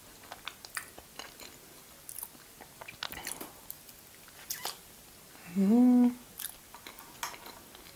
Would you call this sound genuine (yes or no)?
yes